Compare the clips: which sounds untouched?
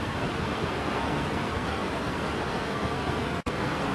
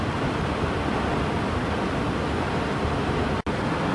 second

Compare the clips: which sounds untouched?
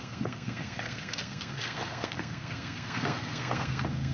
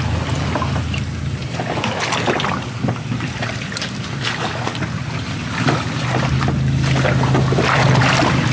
second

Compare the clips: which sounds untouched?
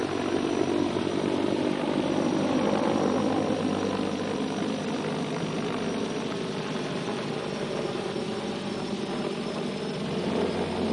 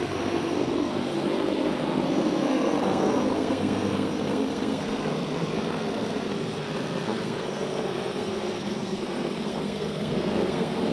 first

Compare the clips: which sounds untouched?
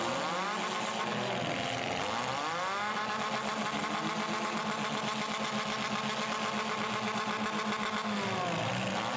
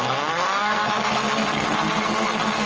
first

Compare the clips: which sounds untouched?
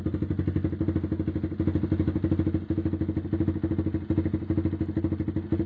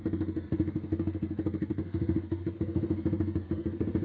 first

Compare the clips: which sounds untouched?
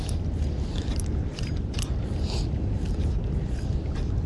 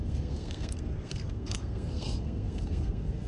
first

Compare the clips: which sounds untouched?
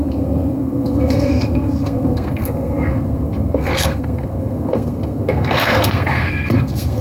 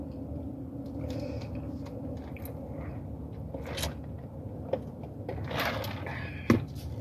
second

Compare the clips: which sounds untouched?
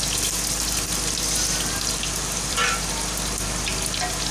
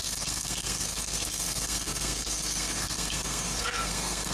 first